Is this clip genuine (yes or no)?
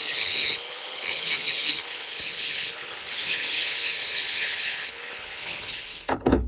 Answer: no